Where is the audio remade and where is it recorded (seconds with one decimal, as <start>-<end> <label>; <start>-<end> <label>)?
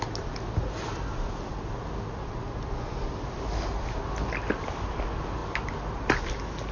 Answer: 0.0-6.7 recorded